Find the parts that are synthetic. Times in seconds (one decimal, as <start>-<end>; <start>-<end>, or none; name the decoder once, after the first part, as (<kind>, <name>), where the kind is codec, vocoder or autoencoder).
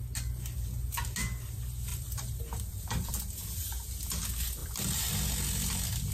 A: 1.9-3.1 (vocoder, BigVGAN v2); 4.6-5.1